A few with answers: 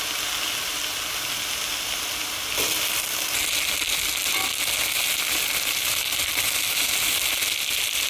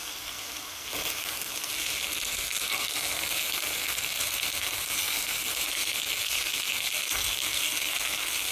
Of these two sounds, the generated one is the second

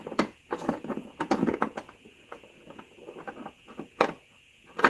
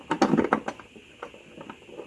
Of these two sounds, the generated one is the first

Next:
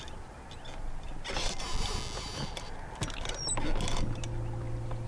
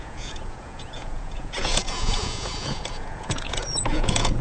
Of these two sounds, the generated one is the second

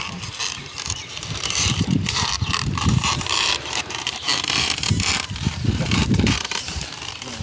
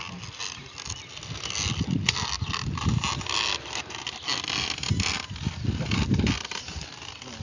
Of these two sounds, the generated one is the first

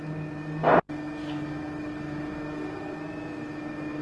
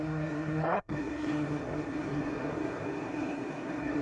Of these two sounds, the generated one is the second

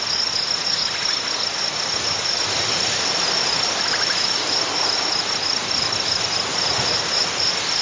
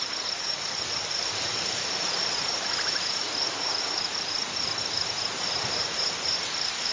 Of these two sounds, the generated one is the second